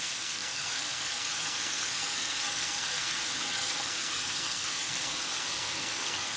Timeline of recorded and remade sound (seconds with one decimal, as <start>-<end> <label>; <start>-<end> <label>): 0.0-6.4 remade